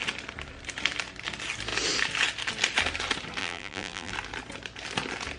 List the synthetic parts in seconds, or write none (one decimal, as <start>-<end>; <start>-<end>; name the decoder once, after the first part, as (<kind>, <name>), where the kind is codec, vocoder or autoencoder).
3.4-4.1 (vocoder, BigVGAN v2)